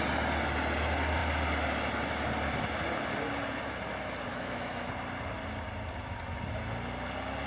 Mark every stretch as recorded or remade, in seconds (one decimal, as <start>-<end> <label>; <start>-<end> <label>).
0.0-4.3 recorded; 4.3-4.9 remade; 4.9-7.5 recorded